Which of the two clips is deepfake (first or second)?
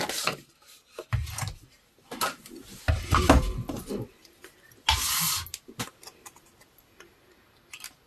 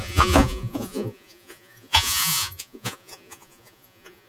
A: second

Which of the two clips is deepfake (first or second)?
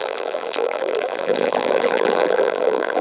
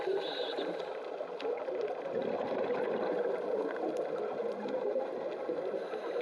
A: first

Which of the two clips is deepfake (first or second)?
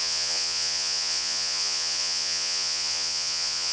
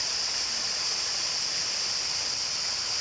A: first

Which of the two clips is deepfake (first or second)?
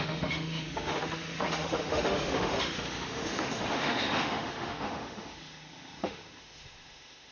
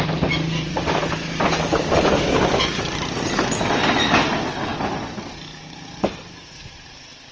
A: first